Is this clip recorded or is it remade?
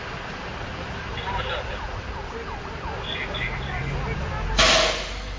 recorded